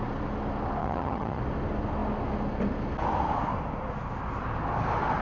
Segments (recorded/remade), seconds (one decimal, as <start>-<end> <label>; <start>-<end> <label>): 0.0-0.8 recorded; 0.8-1.4 remade; 1.4-5.2 recorded